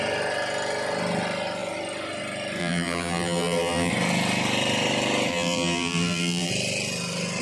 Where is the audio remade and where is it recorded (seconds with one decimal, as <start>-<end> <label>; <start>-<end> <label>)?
0.0-2.6 recorded; 2.6-3.9 remade; 3.9-5.3 recorded; 5.3-6.5 remade; 6.5-7.4 recorded